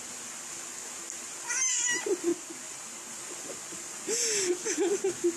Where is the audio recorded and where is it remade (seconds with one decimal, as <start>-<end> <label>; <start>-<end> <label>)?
0.0-5.4 recorded